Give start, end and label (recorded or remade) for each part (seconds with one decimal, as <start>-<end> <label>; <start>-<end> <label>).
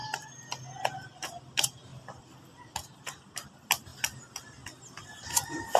0.0-5.8 recorded